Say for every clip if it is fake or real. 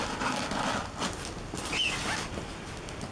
real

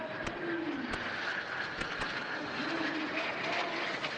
real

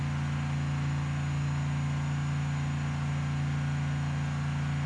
real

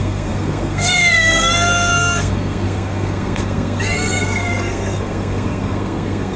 fake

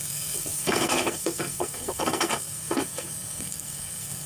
fake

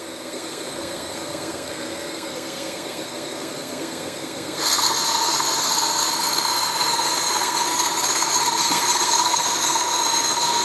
fake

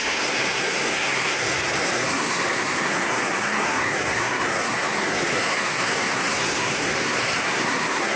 fake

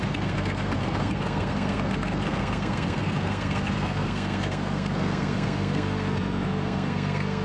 fake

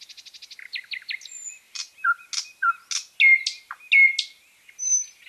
real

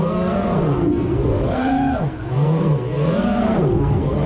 fake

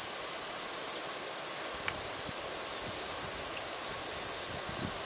real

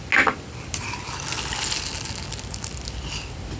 real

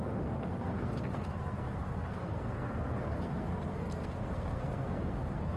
fake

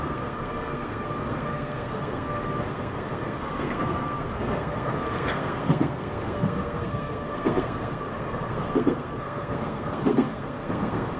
fake